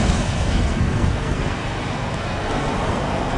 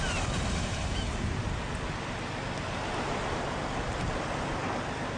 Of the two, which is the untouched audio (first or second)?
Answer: second